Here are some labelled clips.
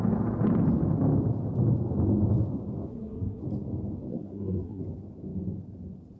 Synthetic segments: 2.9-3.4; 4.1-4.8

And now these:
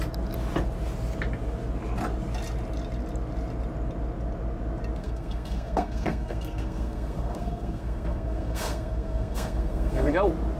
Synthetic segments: 5.0-10.1

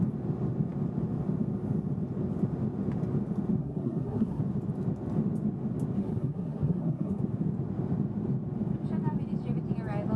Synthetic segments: 3.6-4.4; 6.0-7.2